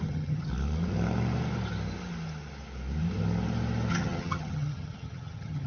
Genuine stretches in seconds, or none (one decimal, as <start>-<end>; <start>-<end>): 0.5-3.9